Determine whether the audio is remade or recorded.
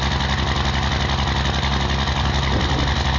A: recorded